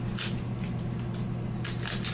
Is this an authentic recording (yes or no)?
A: yes